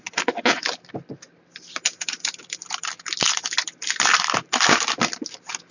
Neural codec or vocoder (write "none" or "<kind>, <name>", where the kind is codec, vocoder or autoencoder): none